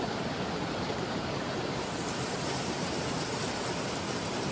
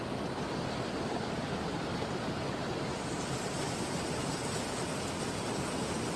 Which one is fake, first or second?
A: first